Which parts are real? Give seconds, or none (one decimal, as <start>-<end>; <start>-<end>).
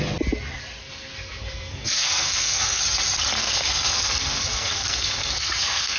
0.0-0.8; 2.8-3.4